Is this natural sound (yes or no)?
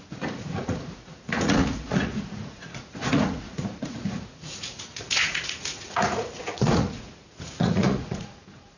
no